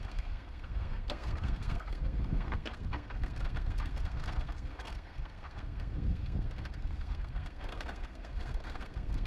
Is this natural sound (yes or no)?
no